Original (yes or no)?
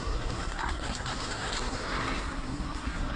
no